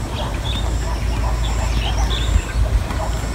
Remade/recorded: recorded